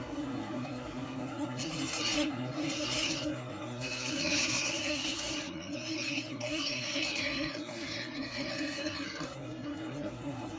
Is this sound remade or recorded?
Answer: remade